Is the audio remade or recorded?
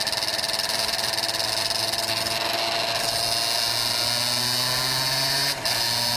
recorded